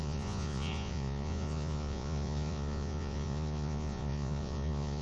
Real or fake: fake